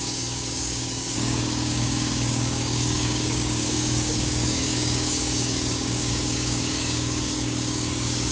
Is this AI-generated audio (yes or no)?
yes